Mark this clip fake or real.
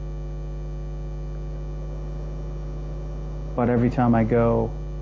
real